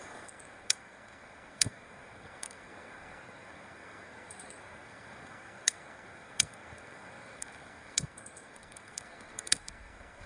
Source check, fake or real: fake